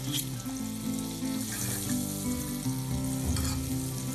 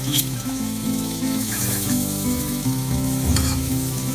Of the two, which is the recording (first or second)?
first